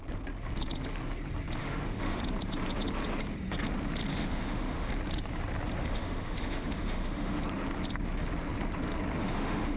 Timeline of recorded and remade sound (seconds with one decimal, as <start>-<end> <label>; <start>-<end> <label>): 0.0-1.6 recorded; 1.6-2.2 remade; 2.2-4.1 recorded; 4.1-4.9 remade; 4.9-5.8 recorded; 5.8-7.4 remade; 7.4-9.2 recorded; 9.2-9.8 remade